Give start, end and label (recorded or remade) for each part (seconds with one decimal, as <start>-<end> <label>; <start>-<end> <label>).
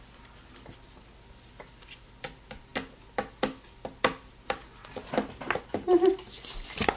0.0-7.0 recorded